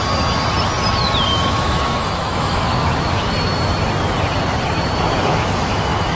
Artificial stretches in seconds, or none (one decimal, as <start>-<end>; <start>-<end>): 1.3-3.3; 5.3-6.2

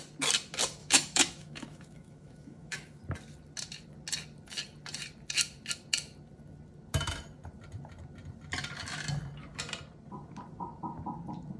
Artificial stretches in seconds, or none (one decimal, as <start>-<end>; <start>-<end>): 0.8-3.0

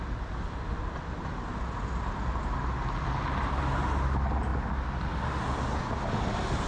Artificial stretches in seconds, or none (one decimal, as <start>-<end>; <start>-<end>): none

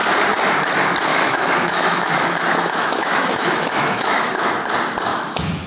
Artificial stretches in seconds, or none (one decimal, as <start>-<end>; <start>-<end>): 1.1-4.5; 5.1-5.7

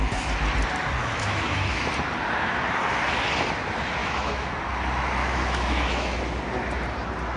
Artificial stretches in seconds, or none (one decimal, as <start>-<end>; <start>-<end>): 1.0-1.8; 4.0-4.5; 5.2-6.2

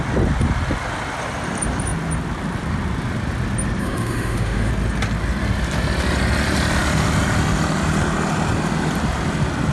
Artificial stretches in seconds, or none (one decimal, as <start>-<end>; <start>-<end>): 3.8-4.7